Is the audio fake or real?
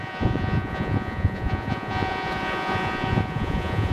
fake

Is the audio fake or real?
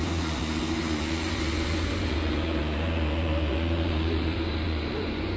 fake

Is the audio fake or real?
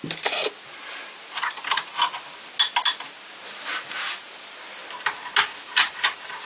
real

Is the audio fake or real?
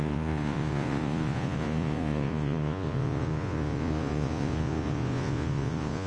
fake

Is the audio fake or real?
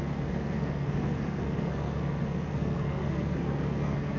fake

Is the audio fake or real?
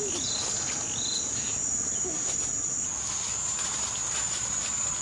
real